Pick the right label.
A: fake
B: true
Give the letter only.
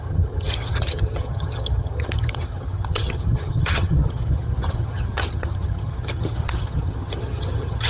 A